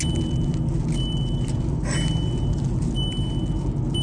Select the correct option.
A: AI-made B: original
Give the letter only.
B